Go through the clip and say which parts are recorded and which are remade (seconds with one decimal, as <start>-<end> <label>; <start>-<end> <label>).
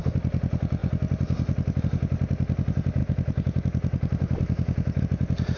0.0-3.0 recorded; 3.0-5.0 remade; 5.0-5.6 recorded